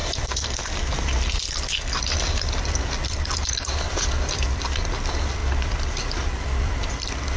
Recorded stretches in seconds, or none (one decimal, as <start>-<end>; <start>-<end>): 0.0-7.4